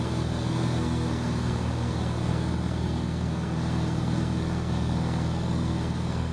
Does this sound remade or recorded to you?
remade